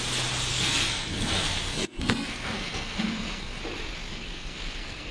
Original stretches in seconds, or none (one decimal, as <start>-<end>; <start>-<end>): 0.0-0.5; 3.6-4.1